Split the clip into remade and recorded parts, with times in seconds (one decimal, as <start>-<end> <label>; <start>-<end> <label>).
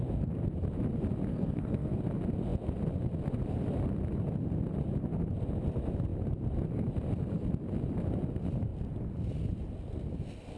0.0-1.3 recorded; 1.3-2.0 remade; 2.0-10.6 recorded